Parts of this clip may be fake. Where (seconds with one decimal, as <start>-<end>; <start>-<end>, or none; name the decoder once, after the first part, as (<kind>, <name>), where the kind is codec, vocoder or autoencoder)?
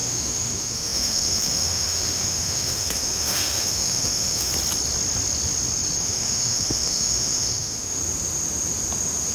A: 0.0-4.5 (autoencoder, DAC-VAE); 6.0-8.0